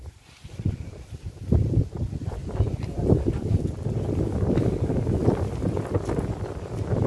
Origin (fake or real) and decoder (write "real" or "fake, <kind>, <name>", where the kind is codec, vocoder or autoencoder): real